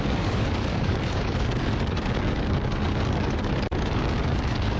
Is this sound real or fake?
fake